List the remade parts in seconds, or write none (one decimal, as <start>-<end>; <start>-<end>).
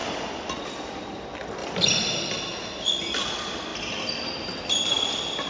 none